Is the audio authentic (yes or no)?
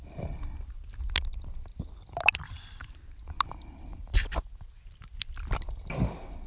yes